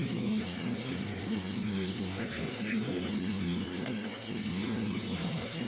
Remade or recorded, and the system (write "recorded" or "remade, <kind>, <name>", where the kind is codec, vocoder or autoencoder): remade, codec, SNAC